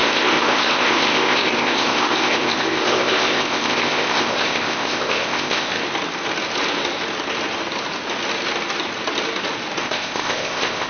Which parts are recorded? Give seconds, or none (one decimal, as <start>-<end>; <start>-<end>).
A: 5.8-9.8